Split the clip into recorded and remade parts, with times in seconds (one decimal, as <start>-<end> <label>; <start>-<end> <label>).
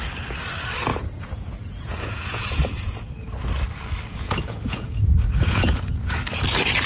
0.0-0.9 recorded; 0.9-3.1 remade; 3.1-4.1 recorded; 4.1-6.2 remade; 6.2-6.9 recorded